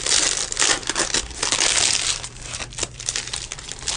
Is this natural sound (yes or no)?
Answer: yes